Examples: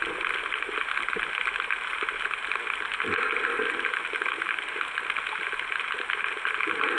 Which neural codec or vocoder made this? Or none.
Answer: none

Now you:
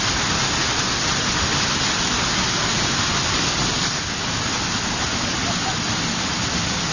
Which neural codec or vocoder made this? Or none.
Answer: none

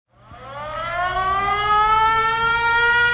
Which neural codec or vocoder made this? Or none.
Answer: codec, DAC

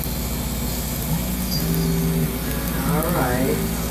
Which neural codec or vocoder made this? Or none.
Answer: none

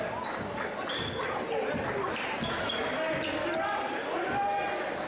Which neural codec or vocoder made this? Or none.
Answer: none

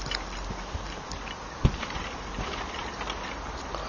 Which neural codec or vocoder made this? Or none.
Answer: none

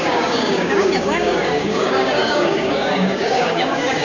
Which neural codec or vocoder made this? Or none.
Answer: codec, DAC